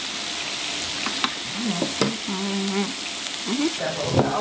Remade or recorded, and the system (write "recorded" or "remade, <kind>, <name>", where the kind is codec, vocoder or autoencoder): recorded